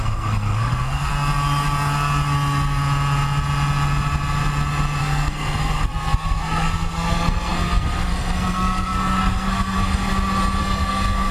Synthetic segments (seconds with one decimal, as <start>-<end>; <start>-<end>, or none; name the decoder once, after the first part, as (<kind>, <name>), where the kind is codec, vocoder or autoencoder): 0.0-1.1 (codec, SNAC); 5.0-10.1; 10.6-11.3